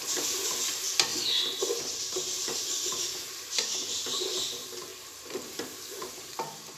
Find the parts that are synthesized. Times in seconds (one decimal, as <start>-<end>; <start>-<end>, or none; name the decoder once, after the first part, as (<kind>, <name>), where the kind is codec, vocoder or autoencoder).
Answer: 0.0-1.1 (vocoder, BigVGAN v2); 1.8-6.8